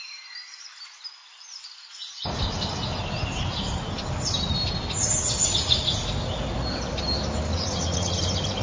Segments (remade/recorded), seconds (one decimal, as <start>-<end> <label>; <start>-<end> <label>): 0.0-7.5 recorded; 7.5-8.2 remade; 8.2-8.6 recorded